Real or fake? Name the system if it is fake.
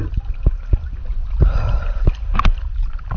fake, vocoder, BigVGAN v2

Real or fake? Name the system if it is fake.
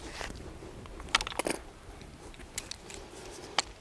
real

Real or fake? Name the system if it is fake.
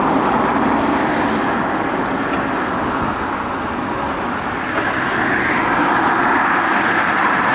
real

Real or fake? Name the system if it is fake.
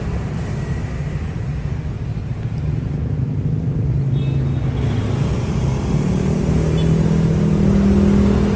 real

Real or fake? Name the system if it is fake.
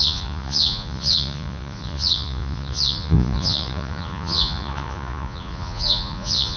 fake, vocoder, Vocos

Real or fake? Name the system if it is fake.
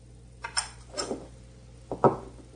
real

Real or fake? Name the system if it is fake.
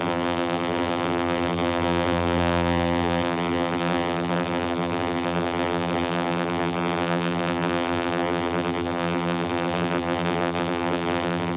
fake, vocoder, BigVGAN v2